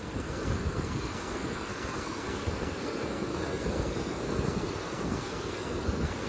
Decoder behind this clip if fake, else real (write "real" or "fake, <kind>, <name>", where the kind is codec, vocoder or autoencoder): fake, codec, SNAC